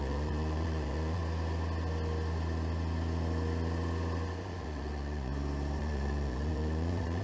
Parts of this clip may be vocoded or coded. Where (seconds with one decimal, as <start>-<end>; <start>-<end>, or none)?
0.0-1.2; 4.4-5.3; 5.8-7.2